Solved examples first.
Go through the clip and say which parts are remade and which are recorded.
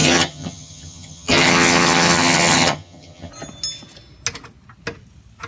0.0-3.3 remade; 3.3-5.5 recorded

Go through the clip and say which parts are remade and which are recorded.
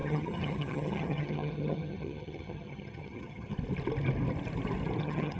0.0-3.5 remade; 3.5-5.0 recorded; 5.0-5.4 remade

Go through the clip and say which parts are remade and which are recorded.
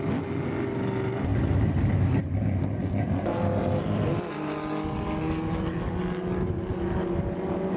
0.0-7.8 recorded